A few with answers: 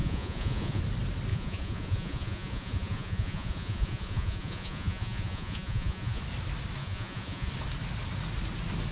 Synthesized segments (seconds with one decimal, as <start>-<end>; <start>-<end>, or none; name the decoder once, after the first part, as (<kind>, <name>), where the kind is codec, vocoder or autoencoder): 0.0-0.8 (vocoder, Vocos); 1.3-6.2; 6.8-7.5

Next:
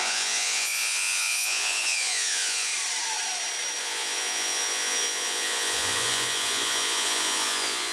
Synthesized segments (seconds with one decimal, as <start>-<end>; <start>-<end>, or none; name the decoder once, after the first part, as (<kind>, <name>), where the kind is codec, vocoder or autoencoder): 0.0-2.7 (vocoder, Vocos); 3.8-7.9

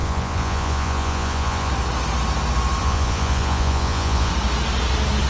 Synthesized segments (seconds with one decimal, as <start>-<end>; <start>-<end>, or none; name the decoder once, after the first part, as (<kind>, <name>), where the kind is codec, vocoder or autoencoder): 0.0-1.7 (vocoder, Vocos); 2.8-4.3

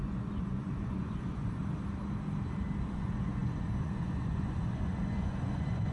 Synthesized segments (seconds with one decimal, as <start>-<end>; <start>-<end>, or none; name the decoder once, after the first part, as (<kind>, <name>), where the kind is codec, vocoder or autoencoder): 0.0-1.6 (vocoder, Vocos); 2.8-5.9

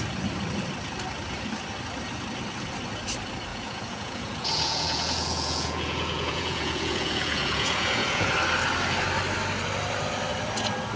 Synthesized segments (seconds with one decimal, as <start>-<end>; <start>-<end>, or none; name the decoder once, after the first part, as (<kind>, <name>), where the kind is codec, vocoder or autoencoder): 3.5-8.3 (vocoder, Vocos)